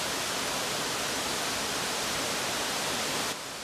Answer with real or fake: real